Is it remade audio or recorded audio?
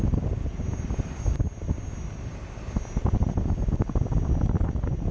recorded